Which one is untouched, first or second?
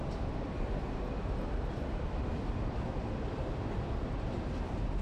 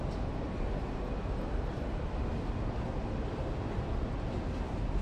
second